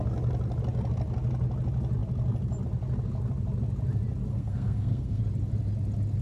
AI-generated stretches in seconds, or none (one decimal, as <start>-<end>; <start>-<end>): 4.3-5.2